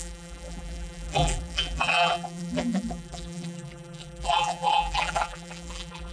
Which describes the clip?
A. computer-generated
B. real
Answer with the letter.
A